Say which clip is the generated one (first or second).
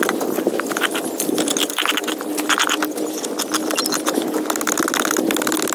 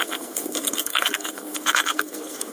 second